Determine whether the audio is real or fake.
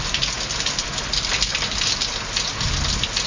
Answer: real